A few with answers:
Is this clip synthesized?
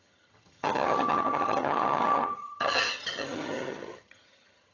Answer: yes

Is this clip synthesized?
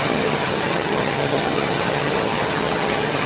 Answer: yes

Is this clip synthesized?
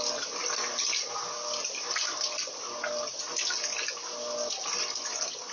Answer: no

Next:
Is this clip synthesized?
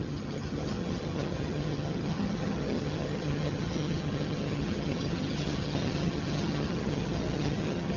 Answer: yes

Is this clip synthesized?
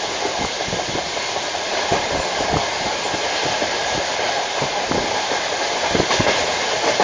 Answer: no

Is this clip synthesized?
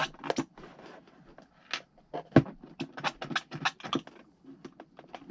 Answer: no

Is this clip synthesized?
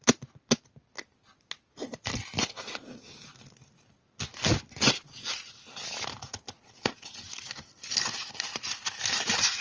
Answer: no